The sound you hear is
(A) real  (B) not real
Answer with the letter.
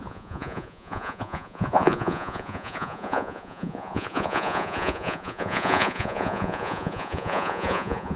B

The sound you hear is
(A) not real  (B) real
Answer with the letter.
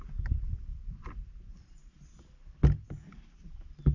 B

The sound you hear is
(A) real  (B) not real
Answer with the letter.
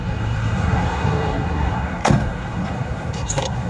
B